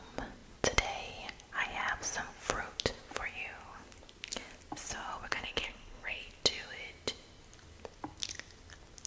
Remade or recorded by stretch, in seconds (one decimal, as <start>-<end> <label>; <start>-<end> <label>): 0.0-5.3 recorded; 5.3-6.2 remade; 6.2-9.1 recorded